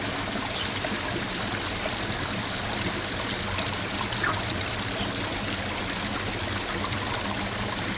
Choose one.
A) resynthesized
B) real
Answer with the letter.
B